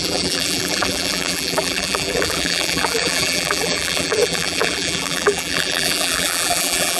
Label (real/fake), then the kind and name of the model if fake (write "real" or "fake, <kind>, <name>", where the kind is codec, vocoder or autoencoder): fake, vocoder, BigVGAN v2